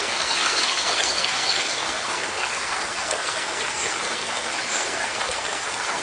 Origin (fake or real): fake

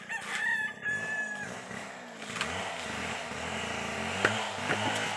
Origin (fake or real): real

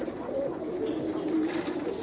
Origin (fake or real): real